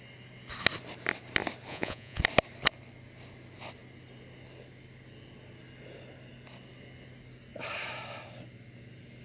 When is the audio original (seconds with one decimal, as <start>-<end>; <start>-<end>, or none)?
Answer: 0.0-1.7; 2.2-9.2

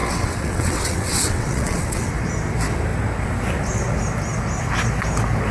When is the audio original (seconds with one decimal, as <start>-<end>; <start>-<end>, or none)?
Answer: 2.1-5.5

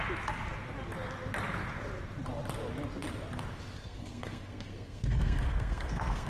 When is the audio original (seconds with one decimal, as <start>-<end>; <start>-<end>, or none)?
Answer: 0.0-3.8

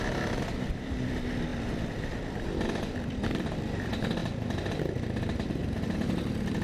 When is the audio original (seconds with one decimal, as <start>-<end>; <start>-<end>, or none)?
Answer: 1.5-2.1

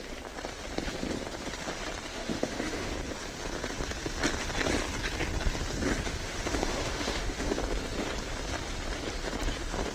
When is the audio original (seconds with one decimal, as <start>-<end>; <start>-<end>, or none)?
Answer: 0.0-2.1; 2.9-6.2; 7.6-9.9